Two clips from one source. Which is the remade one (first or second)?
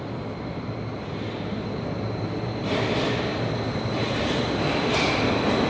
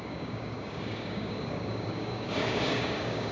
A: second